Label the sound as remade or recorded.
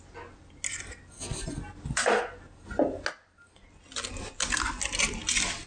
recorded